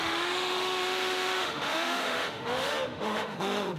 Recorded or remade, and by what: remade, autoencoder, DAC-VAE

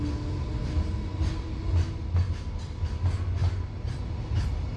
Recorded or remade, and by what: recorded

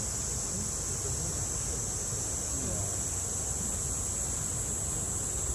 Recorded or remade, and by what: recorded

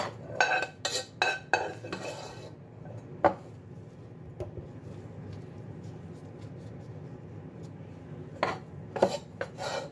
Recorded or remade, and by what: recorded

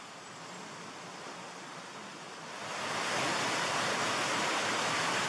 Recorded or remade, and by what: recorded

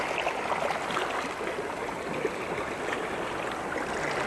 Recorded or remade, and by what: recorded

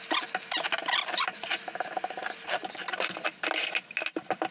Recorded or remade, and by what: recorded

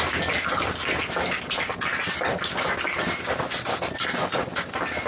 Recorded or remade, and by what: recorded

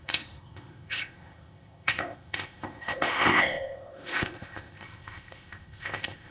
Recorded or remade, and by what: remade, codec, ZipCodec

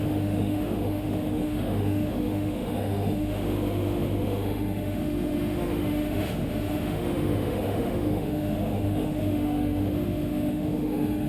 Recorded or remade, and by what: remade, autoencoder, DAC-VAE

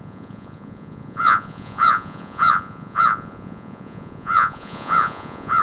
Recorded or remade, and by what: remade, vocoder, Vocos